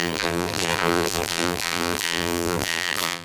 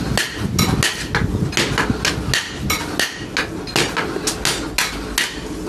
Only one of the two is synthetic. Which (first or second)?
first